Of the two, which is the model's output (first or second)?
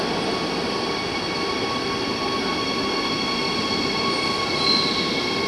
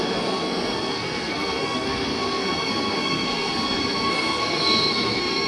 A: second